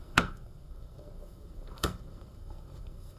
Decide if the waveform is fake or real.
fake